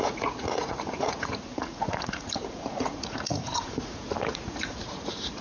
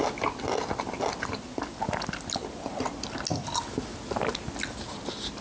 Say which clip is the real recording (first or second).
second